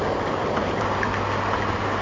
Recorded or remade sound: recorded